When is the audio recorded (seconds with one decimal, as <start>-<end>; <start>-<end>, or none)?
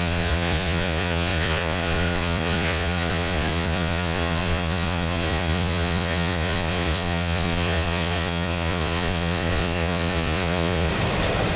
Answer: 10.9-11.6